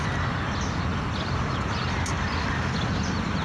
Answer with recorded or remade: recorded